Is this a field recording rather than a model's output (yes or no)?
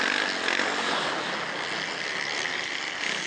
yes